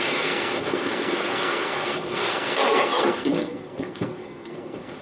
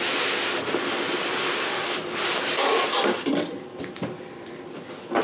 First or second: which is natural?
second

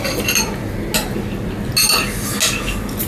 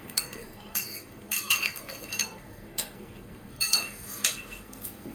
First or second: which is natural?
first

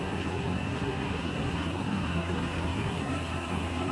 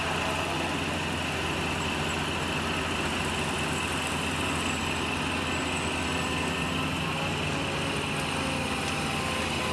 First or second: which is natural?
second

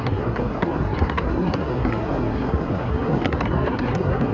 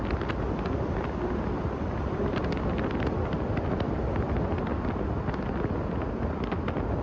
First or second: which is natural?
second